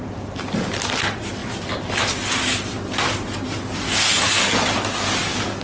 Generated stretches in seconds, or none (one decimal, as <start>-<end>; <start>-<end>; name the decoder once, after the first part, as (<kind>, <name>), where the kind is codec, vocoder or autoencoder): none